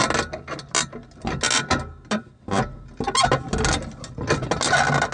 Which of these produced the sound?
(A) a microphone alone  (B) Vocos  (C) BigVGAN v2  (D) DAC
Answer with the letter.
A